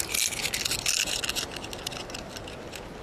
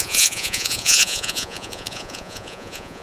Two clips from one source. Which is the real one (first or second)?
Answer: first